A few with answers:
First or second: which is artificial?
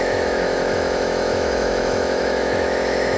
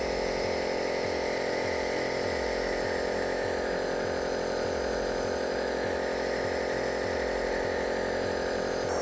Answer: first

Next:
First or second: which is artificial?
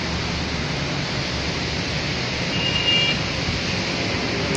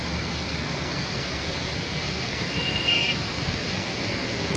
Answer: second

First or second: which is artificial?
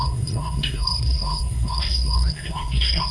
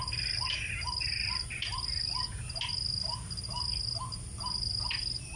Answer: first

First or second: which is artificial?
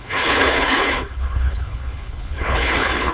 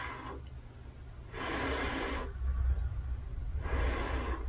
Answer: first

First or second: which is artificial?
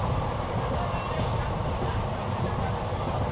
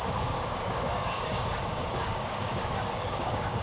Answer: second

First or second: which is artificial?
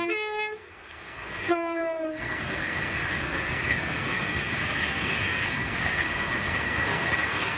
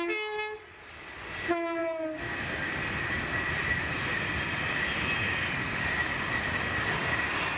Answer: first